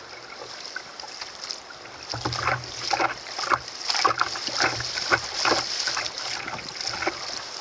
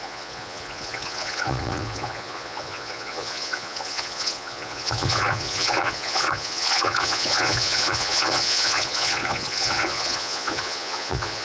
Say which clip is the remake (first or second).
second